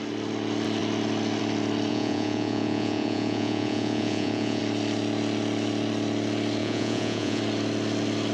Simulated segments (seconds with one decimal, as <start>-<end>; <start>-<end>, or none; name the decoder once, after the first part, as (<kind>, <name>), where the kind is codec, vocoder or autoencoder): 1.9-4.6 (vocoder, Vocos); 6.6-7.4

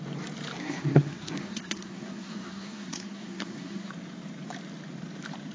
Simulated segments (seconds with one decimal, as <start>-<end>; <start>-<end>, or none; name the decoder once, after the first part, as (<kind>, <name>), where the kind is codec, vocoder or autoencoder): 0.6-3.9 (codec, SNAC)

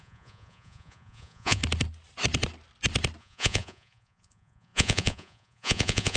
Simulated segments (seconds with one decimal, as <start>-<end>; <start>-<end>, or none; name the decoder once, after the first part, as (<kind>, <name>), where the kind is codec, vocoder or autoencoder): 0.0-1.6 (vocoder, Vocos); 3.2-6.2

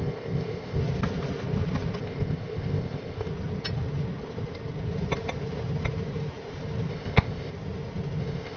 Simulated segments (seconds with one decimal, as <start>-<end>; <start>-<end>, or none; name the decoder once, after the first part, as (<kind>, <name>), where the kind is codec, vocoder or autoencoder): 0.0-0.8 (codec, ZipCodec); 2.0-3.3; 6.9-7.5; 8.2-8.6

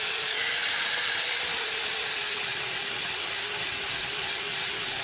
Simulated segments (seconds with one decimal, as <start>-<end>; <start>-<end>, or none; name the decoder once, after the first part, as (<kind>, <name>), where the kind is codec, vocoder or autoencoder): none